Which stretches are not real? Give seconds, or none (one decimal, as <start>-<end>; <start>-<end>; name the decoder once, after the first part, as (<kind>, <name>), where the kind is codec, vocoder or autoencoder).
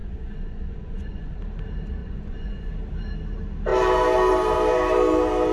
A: 0.0-1.4 (vocoder, Vocos); 2.0-2.7